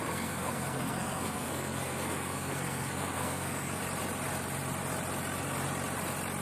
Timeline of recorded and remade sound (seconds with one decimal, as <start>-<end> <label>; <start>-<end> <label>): 0.0-3.8 remade; 3.8-6.4 recorded